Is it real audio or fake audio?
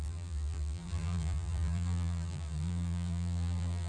fake